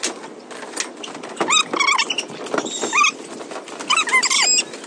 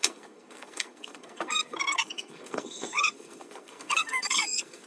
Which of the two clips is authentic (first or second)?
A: first